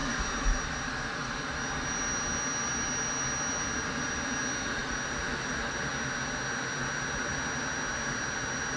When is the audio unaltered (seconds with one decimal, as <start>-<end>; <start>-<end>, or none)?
0.0-8.8